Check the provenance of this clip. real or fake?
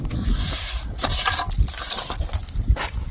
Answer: real